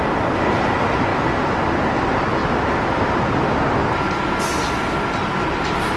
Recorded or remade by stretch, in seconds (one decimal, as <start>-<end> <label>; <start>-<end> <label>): 0.0-1.1 recorded; 1.1-2.0 remade; 2.0-2.4 recorded; 2.4-3.0 remade; 3.0-6.0 recorded